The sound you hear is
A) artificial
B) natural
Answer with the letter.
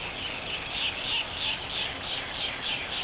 B